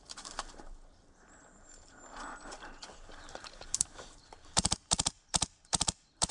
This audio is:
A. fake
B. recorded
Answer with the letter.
A